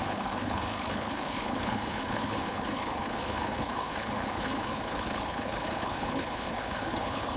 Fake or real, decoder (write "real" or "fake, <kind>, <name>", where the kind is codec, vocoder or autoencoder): fake, codec, HILCodec